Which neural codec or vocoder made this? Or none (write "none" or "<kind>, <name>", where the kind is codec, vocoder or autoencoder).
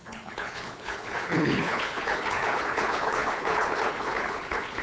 codec, HILCodec